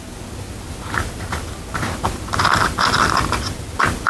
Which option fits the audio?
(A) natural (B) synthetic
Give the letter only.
A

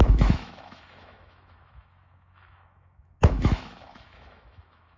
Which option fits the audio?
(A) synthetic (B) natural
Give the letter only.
A